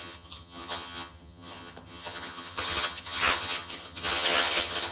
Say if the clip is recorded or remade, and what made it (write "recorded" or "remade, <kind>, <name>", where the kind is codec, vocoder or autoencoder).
remade, vocoder, HiFi-GAN